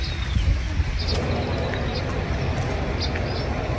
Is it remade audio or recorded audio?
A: recorded